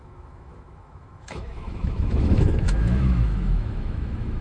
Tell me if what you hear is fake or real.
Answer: fake